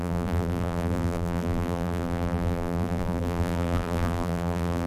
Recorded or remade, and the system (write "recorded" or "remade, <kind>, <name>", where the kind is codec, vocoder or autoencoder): remade, vocoder, BigVGAN v2